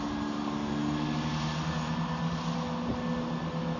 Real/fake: real